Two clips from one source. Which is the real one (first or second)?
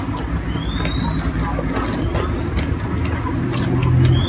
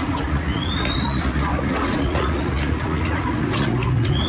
first